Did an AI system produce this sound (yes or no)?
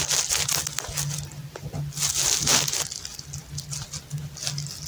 no